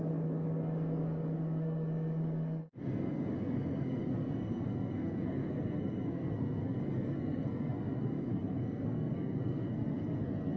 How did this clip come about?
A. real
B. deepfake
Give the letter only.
B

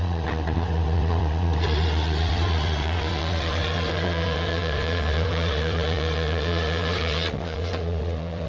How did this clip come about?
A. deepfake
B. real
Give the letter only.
A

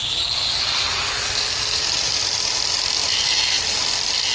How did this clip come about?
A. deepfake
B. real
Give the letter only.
B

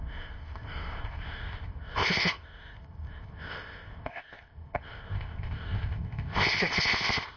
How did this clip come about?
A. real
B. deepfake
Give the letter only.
B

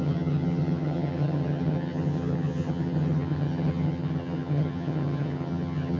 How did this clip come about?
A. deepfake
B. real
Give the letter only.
A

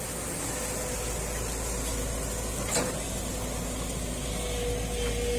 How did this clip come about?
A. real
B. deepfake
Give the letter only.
A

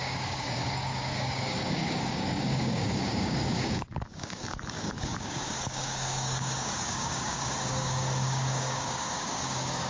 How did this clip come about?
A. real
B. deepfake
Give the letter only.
B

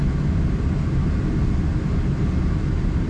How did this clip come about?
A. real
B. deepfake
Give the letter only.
A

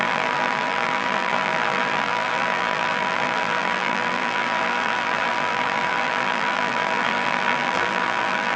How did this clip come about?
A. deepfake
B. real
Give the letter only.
A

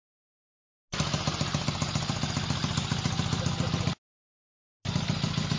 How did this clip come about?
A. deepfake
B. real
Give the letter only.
B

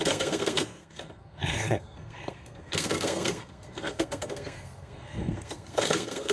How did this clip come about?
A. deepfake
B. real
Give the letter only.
A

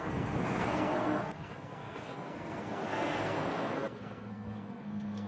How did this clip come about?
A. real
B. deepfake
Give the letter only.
B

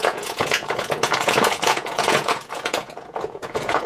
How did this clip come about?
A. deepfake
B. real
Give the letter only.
A